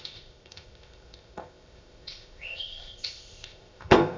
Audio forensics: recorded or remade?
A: remade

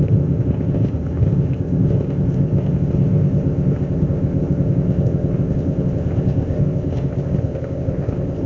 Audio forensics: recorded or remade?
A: remade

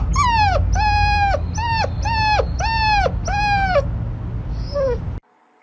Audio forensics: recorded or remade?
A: recorded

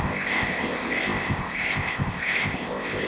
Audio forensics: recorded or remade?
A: remade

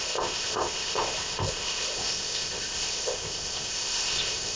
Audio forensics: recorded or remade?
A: remade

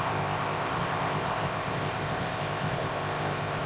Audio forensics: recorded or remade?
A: remade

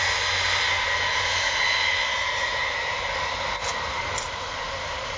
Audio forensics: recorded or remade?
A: recorded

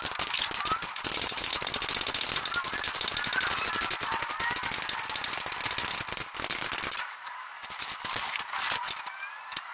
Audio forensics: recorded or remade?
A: recorded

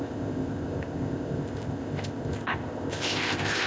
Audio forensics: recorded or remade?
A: remade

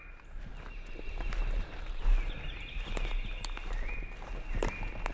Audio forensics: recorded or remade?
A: recorded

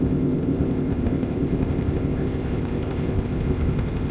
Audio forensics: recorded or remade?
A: remade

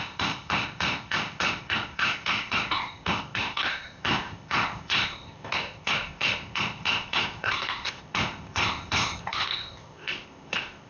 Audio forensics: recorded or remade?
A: remade